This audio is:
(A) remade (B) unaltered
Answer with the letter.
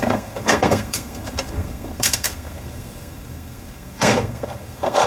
A